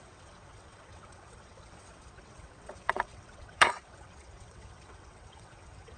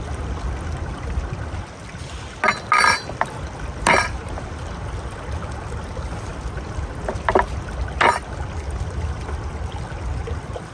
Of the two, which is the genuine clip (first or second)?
second